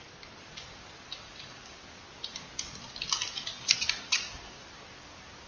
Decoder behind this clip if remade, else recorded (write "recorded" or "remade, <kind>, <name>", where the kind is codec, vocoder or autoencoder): recorded